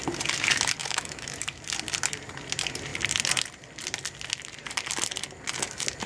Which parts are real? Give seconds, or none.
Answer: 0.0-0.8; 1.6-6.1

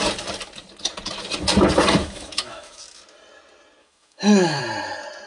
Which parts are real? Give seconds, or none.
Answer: 0.0-2.0; 2.8-3.8; 4.6-5.3

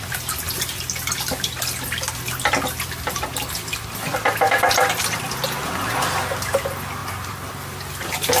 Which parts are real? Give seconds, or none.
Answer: 0.0-8.4

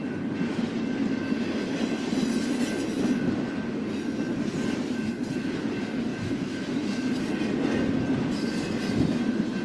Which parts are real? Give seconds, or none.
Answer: 0.0-6.1; 7.1-9.6